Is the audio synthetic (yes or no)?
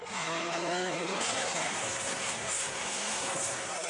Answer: yes